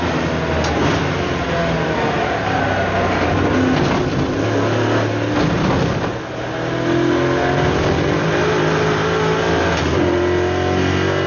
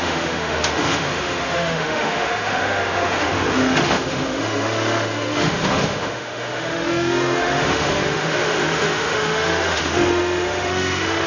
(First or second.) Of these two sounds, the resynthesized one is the second